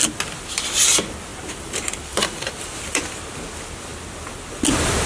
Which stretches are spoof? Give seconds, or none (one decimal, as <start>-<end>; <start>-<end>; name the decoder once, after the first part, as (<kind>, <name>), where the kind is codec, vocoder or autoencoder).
1.3-3.0 (vocoder, BigVGAN v2)